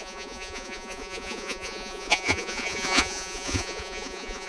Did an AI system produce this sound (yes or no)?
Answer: yes